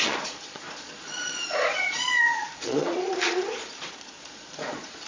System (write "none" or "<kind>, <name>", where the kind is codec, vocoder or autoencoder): vocoder, Vocos